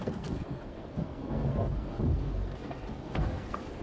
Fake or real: fake